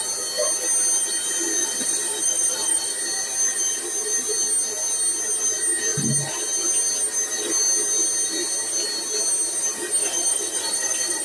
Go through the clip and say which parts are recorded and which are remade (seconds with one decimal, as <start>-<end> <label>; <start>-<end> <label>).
0.0-1.6 recorded; 1.6-2.9 remade; 2.9-10.0 recorded; 10.0-11.2 remade